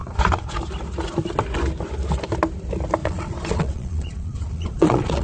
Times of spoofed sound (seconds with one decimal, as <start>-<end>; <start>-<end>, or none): 0.0-0.6; 3.0-5.2